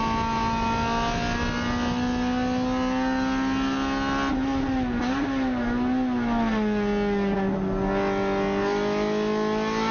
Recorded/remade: recorded